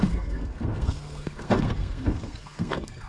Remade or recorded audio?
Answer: remade